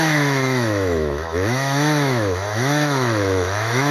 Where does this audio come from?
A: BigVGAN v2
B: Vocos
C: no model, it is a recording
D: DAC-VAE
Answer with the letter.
D